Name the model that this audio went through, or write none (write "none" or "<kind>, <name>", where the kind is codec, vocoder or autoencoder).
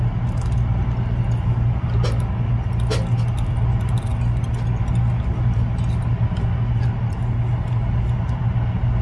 none